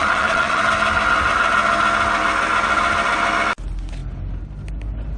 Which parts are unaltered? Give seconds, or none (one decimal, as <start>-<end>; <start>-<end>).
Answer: 0.6-5.2

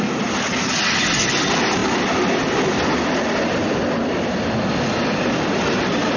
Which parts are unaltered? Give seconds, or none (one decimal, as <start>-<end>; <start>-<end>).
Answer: 0.0-6.2

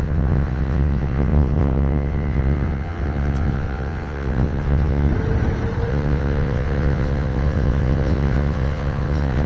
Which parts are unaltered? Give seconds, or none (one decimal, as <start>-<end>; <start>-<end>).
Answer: 5.1-5.9

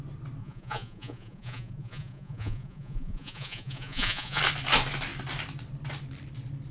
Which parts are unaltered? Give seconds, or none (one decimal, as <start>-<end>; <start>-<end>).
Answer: 0.0-0.4; 4.4-6.7

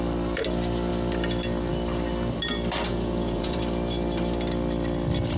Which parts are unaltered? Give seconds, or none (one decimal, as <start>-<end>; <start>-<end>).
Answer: 0.0-2.9; 3.6-5.4

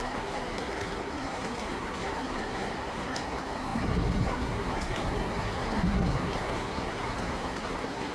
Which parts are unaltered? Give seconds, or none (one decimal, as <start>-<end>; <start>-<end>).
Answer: none

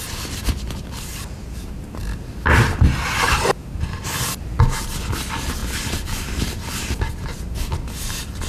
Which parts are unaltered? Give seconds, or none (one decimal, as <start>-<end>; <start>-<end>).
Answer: 0.0-8.5